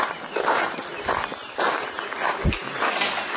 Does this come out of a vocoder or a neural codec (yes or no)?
no